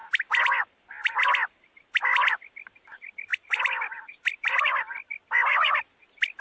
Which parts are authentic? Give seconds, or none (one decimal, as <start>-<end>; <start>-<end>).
0.0-3.3; 4.6-6.4